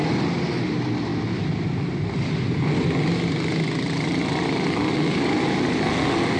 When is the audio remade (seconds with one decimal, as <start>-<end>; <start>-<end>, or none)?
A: none